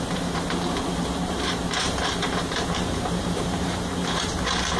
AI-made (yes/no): yes